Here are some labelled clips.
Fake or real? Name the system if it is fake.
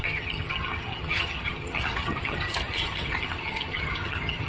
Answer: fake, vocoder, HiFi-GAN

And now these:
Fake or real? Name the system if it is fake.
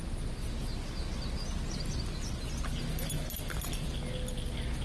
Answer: real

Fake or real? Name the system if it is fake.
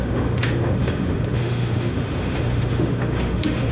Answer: fake, autoencoder, DAC-VAE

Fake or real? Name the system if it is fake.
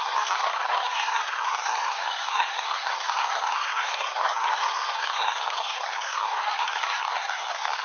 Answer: fake, codec, SNAC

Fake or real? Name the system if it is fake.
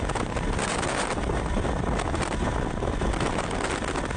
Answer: real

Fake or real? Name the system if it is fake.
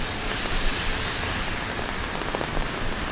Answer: real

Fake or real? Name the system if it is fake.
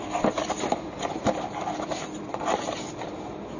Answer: real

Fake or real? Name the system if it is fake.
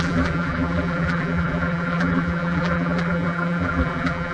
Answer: fake, vocoder, BigVGAN v2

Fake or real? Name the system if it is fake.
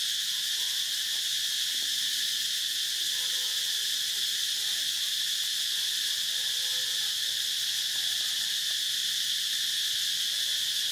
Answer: real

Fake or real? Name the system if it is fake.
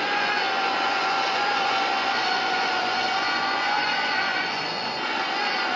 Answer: fake, vocoder, Vocos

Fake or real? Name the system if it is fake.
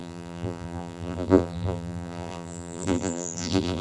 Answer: fake, vocoder, BigVGAN v2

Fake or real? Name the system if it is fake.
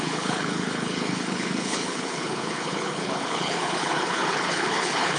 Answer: fake, codec, HILCodec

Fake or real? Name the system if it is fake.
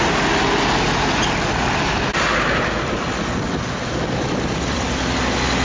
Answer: real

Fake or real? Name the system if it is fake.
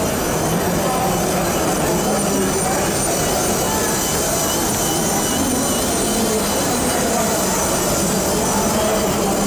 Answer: real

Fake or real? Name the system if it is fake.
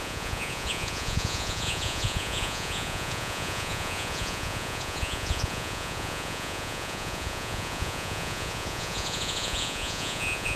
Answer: fake, vocoder, Vocos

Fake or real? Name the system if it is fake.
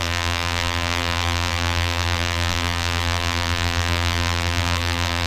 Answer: fake, vocoder, BigVGAN v2